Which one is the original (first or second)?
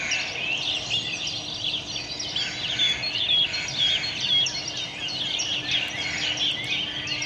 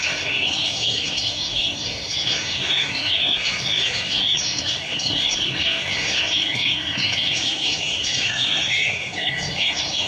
first